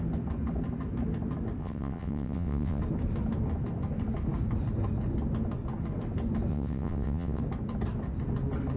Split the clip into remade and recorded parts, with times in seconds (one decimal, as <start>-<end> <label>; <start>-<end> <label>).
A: 0.0-1.6 recorded; 1.6-2.8 remade; 2.8-6.5 recorded; 6.5-7.4 remade; 7.4-8.8 recorded